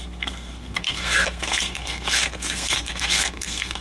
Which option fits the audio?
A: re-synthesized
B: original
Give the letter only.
A